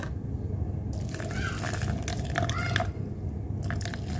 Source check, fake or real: real